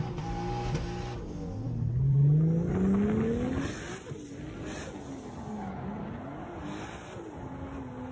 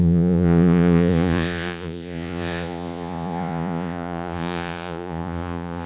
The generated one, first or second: second